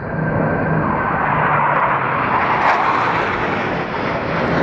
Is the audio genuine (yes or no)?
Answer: yes